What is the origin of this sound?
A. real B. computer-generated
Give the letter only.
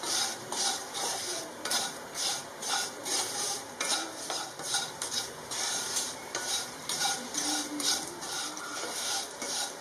B